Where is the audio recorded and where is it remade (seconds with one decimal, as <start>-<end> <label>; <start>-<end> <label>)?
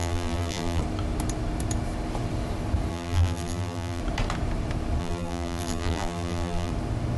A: 0.0-0.8 remade; 0.8-2.9 recorded; 2.9-4.0 remade; 4.0-5.0 recorded; 5.0-6.7 remade; 6.7-7.2 recorded